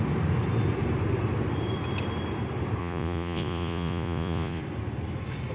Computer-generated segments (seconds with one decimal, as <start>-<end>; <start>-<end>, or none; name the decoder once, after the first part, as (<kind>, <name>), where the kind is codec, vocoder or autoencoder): 2.8-4.6 (vocoder, Vocos)